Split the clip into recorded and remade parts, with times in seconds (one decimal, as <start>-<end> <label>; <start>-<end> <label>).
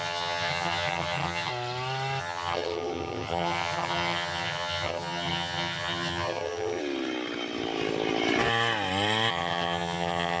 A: 0.0-1.5 remade; 1.5-2.2 recorded; 2.2-6.8 remade; 6.8-9.3 recorded; 9.3-10.4 remade